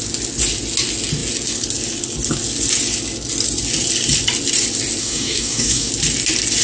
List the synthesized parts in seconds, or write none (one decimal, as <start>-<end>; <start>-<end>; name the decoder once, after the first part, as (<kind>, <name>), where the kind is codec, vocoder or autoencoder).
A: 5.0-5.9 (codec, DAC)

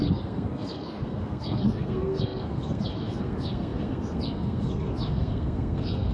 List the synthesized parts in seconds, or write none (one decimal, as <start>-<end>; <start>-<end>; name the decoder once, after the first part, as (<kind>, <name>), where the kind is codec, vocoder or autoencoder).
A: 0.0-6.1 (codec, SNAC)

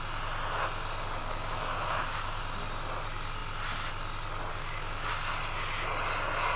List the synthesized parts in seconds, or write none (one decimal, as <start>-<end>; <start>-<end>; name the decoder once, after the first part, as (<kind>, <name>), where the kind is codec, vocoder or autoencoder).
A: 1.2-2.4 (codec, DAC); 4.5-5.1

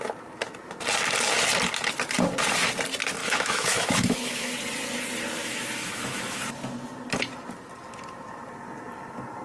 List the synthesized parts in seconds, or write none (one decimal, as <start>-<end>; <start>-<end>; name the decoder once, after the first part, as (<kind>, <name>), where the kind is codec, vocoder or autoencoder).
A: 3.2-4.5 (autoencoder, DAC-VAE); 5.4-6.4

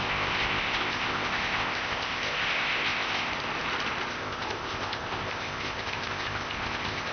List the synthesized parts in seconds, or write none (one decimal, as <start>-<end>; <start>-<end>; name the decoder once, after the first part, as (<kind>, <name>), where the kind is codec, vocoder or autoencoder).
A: 0.0-3.3 (codec, ZipCodec); 4.1-7.1